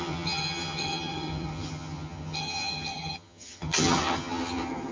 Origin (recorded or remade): remade